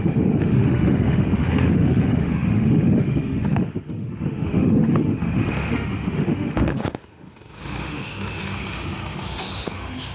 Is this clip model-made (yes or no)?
yes